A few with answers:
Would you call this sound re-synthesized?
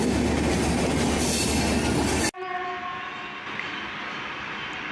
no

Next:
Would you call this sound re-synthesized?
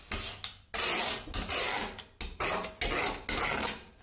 no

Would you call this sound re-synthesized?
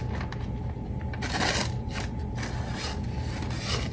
no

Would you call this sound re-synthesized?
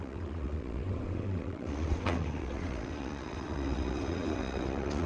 yes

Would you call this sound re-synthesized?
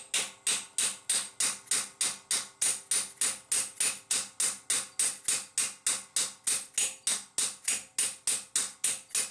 no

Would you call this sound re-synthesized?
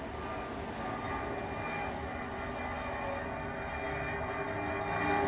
no